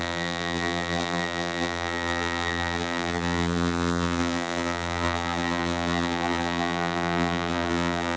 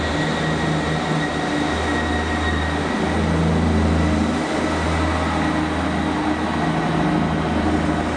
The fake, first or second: first